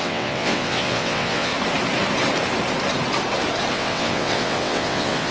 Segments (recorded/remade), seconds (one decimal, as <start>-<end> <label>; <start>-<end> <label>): 0.0-1.5 remade; 1.5-3.7 recorded; 3.7-5.3 remade